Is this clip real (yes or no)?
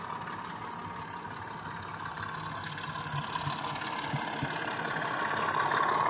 yes